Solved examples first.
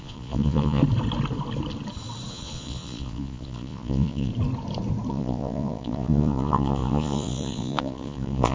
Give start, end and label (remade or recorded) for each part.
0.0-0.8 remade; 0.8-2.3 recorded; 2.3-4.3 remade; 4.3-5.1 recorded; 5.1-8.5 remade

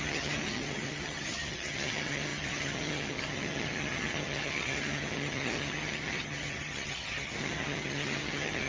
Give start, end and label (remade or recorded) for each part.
0.0-8.7 remade